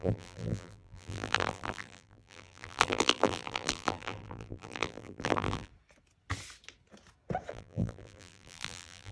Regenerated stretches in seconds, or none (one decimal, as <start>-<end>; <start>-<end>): 0.0-5.7; 7.5-9.1